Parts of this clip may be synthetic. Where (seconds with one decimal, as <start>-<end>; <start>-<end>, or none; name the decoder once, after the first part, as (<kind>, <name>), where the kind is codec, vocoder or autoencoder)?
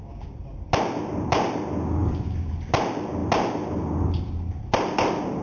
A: none